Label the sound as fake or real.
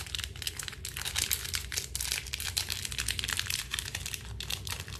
real